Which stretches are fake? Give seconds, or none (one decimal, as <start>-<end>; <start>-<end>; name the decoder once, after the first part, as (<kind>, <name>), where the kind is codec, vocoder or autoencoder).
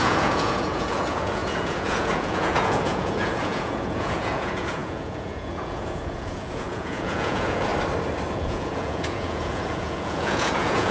0.0-7.7 (vocoder, Vocos); 8.3-10.9